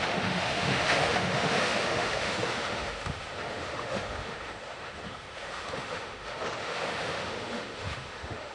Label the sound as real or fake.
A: fake